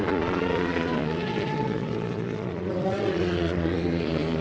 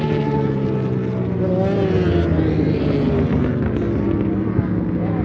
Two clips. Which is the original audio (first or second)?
second